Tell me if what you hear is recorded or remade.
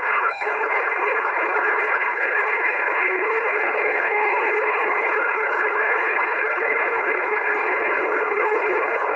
remade